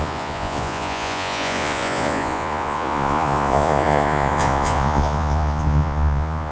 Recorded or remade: remade